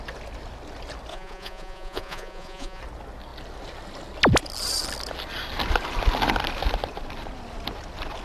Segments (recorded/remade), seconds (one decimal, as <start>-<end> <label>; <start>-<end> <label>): 0.0-1.1 recorded; 1.1-2.8 remade; 2.8-8.2 recorded